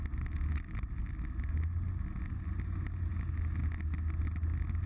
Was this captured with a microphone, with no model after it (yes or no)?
yes